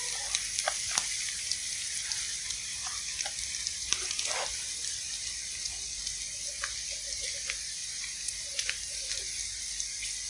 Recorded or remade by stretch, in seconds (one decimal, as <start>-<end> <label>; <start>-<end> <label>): 0.0-1.0 recorded; 1.0-4.2 remade; 4.2-7.8 recorded; 7.8-9.2 remade; 9.2-10.3 recorded